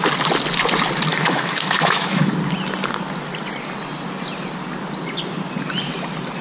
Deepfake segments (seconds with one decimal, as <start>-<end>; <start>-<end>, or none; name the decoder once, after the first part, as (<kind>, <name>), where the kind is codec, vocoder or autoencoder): 1.1-2.3 (autoencoder, DAC-VAE)